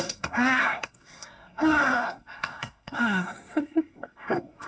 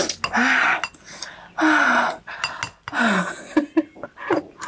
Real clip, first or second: second